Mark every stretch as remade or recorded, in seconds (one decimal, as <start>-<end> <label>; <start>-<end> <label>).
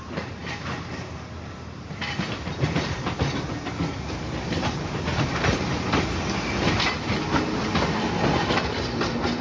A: 0.0-9.4 recorded